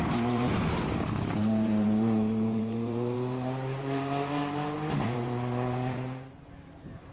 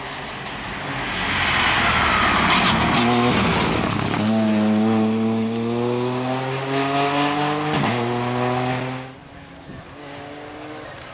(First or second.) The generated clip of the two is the first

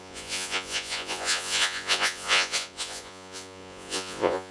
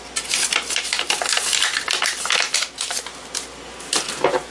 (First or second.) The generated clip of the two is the first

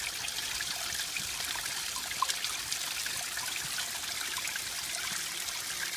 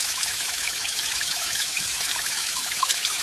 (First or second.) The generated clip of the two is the second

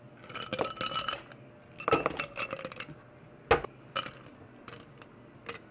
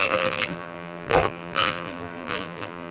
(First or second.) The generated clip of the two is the second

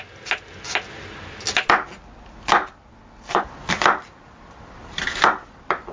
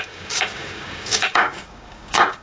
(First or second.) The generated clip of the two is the second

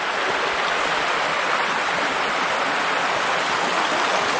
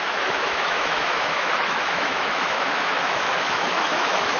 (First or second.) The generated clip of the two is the second